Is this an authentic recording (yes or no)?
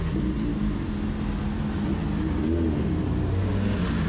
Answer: yes